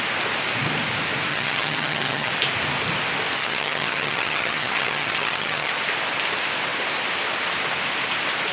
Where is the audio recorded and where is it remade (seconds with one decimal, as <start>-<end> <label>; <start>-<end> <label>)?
0.0-1.3 recorded; 1.3-2.3 remade; 2.3-3.4 recorded; 3.4-5.7 remade; 5.7-8.5 recorded